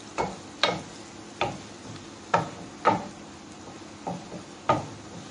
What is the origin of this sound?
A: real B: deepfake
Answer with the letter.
A